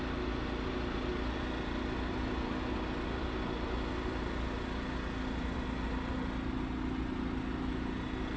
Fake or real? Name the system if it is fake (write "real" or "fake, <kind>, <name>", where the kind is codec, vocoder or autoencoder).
real